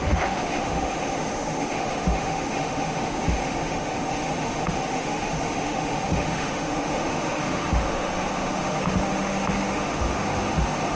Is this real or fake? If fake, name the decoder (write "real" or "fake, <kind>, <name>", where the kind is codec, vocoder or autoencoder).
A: fake, autoencoder, DAC-VAE